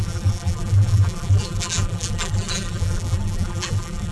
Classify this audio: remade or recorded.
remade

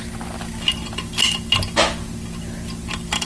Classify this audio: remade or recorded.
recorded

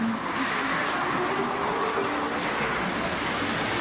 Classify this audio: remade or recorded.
recorded